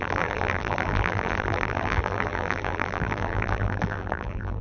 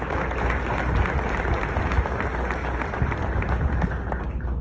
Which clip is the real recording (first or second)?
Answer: second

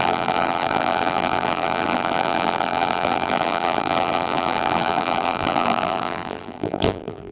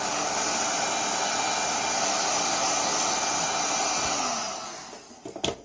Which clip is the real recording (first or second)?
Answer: second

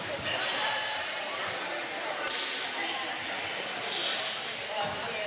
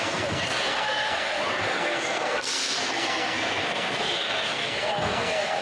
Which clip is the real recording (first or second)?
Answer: first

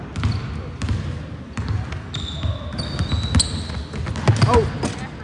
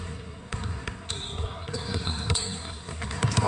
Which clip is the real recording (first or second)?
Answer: first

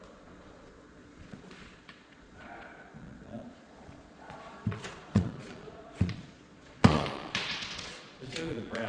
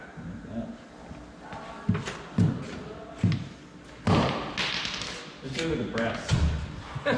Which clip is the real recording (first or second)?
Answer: second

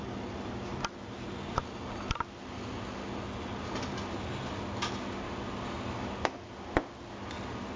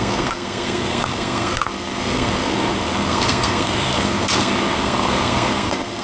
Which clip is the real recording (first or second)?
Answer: first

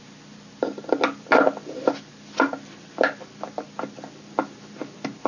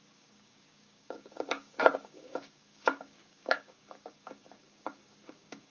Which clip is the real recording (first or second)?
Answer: first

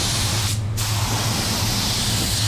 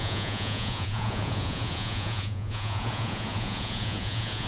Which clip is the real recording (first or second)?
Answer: first